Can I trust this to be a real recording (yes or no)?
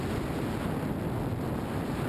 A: yes